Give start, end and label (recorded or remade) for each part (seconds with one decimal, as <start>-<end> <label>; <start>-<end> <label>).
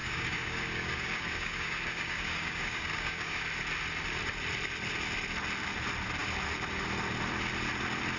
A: 0.0-3.4 remade; 3.4-8.2 recorded